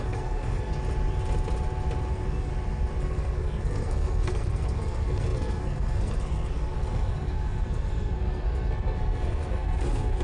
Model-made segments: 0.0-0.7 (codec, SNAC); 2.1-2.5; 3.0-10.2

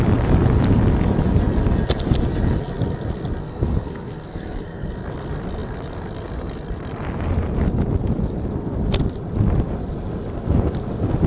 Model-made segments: 3.4-4.9 (codec, SNAC)

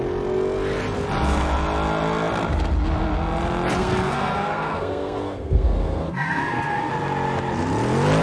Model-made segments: 3.8-6.9 (codec, SNAC)

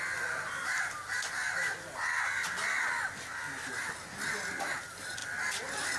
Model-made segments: none

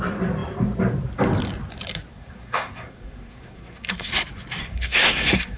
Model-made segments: 2.1-4.1 (codec, SNAC); 4.6-5.6

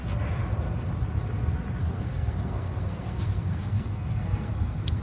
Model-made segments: 1.8-5.0 (codec, SNAC)

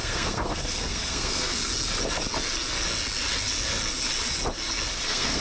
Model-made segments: 0.0-1.7 (codec, SNAC); 4.9-5.4